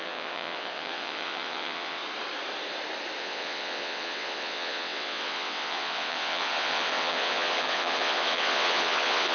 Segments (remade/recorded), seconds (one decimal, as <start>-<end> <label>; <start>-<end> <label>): 0.0-2.0 remade; 2.0-3.2 recorded; 3.2-9.3 remade